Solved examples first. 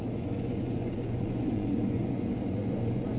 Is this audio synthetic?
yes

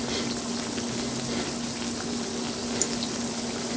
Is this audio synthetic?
no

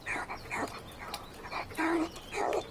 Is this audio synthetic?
no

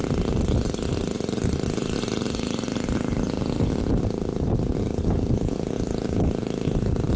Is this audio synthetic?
no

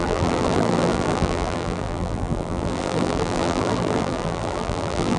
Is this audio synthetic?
yes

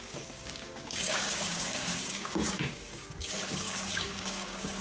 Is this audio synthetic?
yes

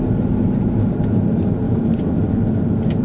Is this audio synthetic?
no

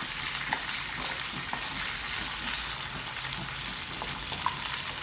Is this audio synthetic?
no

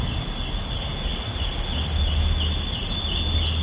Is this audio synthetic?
no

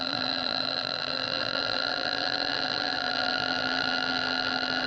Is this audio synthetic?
yes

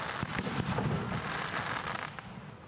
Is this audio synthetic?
no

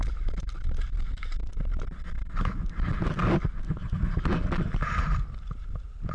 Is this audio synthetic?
no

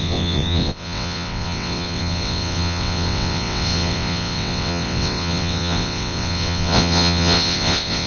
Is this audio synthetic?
yes